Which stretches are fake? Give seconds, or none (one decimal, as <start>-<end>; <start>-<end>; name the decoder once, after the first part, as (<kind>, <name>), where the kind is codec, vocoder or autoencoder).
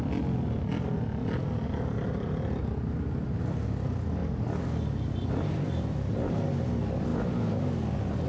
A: 1.2-2.7 (vocoder, BigVGAN v2); 4.2-6.3